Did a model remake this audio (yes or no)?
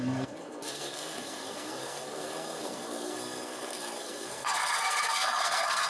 yes